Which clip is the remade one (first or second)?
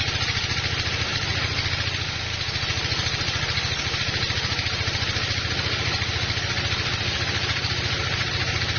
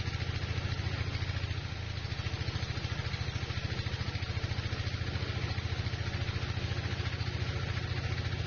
first